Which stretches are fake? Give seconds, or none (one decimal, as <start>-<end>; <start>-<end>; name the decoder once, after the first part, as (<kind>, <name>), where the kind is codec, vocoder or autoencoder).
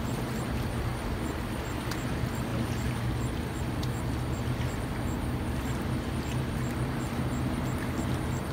none